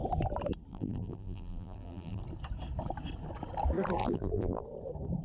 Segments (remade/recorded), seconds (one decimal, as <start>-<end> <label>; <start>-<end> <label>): 0.0-0.7 recorded; 0.7-2.2 remade; 2.2-4.0 recorded; 4.0-4.6 remade; 4.6-5.2 recorded